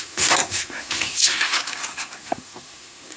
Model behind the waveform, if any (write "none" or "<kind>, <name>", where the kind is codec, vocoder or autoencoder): codec, SNAC